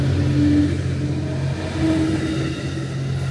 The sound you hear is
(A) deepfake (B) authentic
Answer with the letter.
B